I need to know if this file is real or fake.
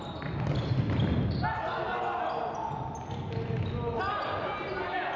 real